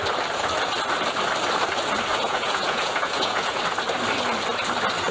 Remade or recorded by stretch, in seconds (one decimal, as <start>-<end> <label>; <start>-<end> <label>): 0.0-2.1 recorded; 2.1-3.6 remade; 3.6-5.1 recorded